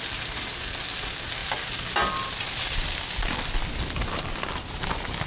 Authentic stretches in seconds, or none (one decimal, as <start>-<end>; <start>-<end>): 0.0-5.3